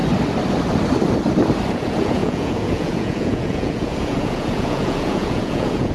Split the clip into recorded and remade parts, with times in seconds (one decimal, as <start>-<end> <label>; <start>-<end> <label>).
0.0-1.7 recorded; 1.7-5.9 remade